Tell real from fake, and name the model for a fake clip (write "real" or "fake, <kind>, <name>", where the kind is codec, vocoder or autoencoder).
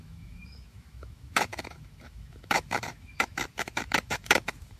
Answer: fake, autoencoder, DAC-VAE